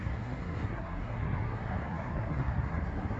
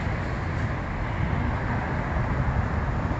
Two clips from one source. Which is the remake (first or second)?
first